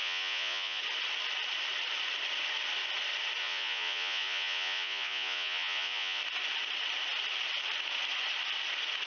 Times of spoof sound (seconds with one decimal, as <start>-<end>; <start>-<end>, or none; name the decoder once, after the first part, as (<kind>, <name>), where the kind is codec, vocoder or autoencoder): 0.0-0.8 (vocoder, Vocos); 3.4-6.2